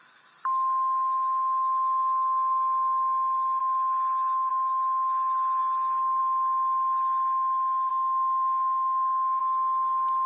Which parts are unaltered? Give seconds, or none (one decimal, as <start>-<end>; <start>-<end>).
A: 0.0-7.9; 9.4-10.3